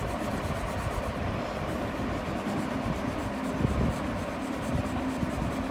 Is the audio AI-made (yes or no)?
no